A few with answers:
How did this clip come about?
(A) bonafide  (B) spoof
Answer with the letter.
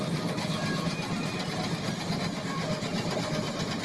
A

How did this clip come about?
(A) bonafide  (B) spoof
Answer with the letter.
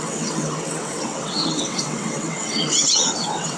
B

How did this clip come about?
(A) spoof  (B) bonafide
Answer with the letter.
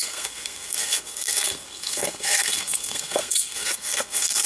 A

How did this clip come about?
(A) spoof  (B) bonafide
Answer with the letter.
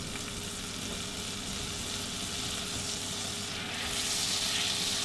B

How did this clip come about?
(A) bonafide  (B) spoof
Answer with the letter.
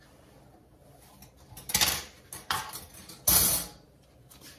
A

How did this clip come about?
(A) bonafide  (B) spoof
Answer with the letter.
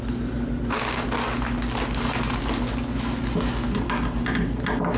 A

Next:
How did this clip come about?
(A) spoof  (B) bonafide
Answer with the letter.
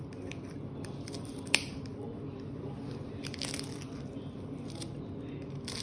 B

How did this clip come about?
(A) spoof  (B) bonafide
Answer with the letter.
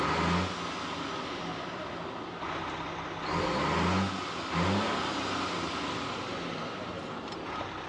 B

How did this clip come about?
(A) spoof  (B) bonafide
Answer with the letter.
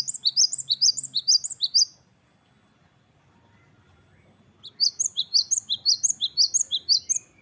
B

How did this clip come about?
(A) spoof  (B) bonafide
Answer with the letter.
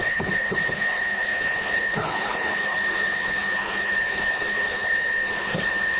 A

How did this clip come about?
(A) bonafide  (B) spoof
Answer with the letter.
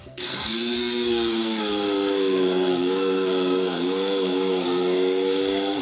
B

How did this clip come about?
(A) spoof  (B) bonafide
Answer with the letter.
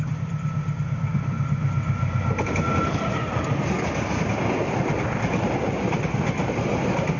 B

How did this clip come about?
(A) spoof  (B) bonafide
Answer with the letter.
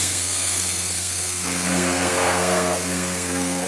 A